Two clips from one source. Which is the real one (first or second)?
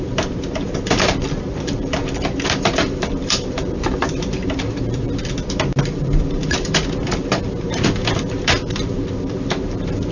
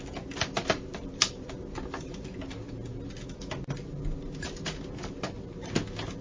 second